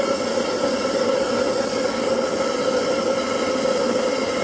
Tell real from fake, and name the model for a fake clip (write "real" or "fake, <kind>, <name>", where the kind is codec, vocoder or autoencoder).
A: real